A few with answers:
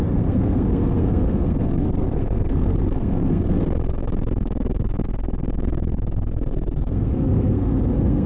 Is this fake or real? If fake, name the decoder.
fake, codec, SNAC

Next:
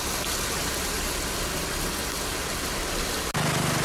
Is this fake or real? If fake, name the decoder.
real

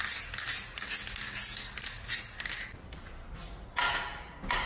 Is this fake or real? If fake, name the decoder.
real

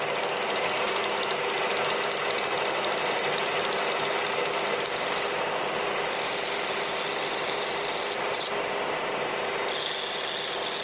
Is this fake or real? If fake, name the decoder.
real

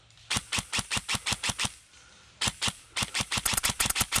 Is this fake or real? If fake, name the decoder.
real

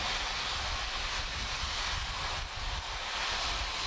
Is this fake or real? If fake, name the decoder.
real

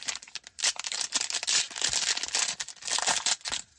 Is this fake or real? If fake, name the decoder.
real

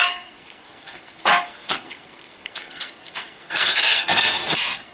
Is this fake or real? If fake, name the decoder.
fake, codec, SNAC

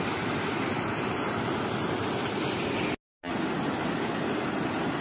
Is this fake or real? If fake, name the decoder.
real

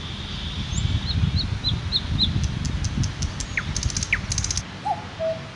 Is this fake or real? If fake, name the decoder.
real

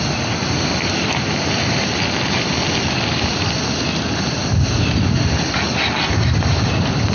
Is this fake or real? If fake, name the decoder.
real